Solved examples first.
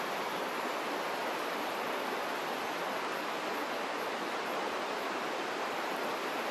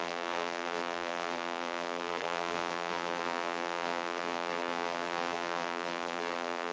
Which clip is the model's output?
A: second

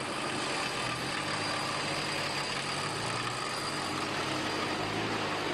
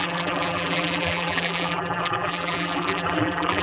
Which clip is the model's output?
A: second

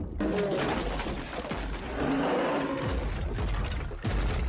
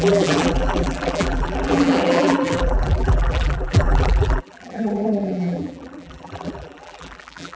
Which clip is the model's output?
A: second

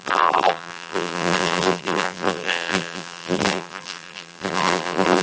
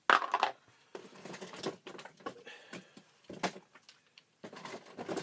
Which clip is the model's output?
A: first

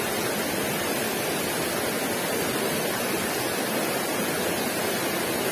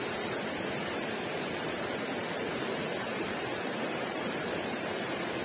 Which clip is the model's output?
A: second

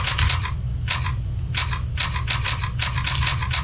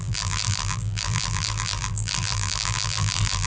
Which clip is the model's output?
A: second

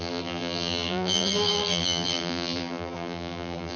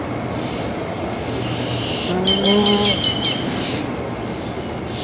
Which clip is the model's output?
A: first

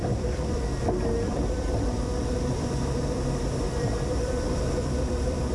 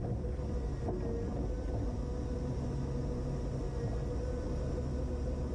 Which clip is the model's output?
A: first